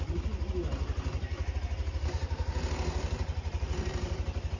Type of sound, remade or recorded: recorded